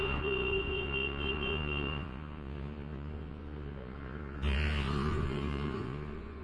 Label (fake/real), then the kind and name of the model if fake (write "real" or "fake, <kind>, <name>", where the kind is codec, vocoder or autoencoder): fake, vocoder, Vocos